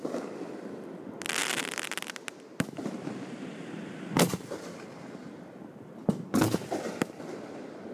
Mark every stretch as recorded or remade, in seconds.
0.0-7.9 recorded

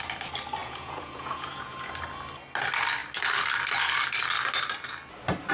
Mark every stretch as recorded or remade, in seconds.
0.0-0.6 recorded; 0.6-1.9 remade; 1.9-5.5 recorded

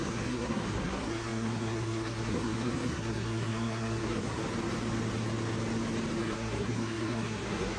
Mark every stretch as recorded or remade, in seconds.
0.0-4.4 remade; 4.4-6.2 recorded; 6.2-7.8 remade

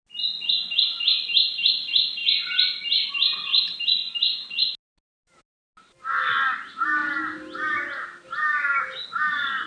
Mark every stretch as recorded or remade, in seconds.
0.0-9.7 recorded

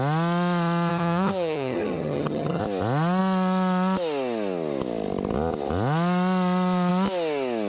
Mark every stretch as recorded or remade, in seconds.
0.0-0.9 recorded; 0.9-2.6 remade; 2.6-7.7 recorded